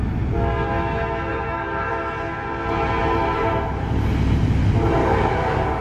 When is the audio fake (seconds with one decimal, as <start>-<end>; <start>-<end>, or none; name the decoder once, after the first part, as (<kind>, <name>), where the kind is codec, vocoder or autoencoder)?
1.3-1.9 (codec, DAC); 5.0-5.8